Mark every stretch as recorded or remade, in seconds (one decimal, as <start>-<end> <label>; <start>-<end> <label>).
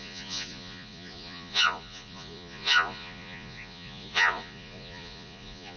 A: 0.0-5.8 remade